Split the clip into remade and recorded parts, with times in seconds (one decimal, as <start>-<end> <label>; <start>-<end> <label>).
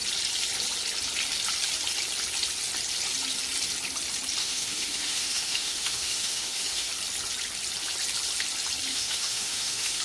0.0-4.4 recorded; 4.4-6.9 remade; 6.9-8.9 recorded; 8.9-10.0 remade